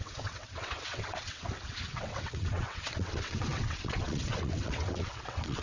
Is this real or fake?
fake